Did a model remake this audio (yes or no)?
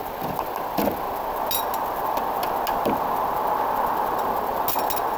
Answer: no